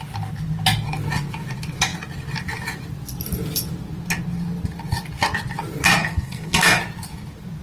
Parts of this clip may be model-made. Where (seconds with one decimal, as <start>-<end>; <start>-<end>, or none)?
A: 6.0-6.8